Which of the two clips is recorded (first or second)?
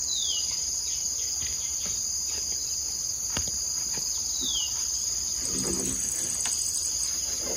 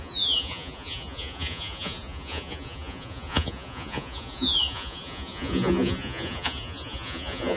first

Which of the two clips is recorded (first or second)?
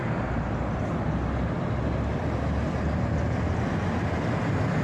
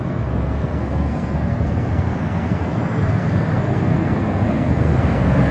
first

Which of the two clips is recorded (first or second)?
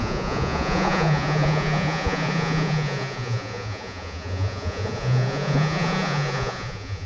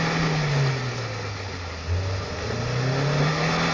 second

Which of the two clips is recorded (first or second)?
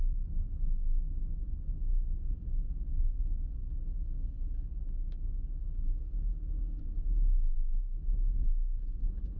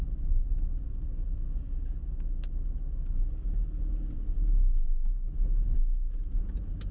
second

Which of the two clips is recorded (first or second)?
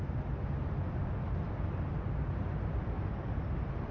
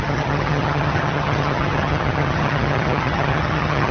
first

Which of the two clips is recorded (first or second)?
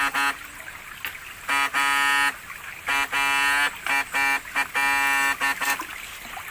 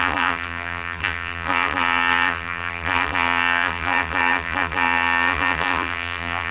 first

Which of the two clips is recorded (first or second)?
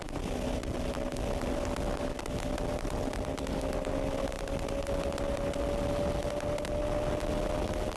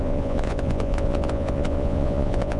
first